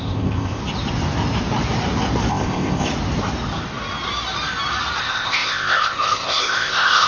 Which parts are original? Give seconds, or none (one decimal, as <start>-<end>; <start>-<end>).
0.6-2.3; 2.9-5.0